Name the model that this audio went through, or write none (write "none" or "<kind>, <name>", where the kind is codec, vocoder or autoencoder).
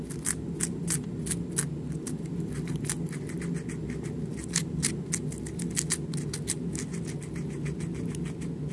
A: none